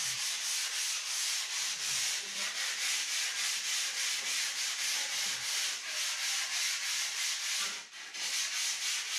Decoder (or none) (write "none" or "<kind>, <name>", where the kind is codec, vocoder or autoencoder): none